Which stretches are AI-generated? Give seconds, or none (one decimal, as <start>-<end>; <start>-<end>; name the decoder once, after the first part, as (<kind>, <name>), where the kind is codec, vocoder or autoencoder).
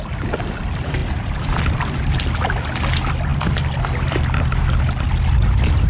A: none